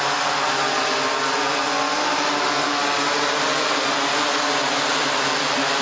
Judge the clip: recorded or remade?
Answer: recorded